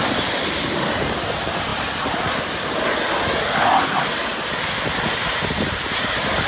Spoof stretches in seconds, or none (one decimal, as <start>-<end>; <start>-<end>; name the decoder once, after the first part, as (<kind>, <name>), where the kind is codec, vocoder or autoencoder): 0.0-1.0 (vocoder, BigVGAN v2); 1.7-2.4